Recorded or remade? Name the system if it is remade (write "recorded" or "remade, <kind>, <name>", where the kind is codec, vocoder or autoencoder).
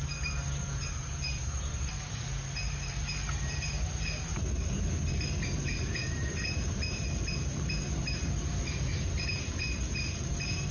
remade, vocoder, BigVGAN v2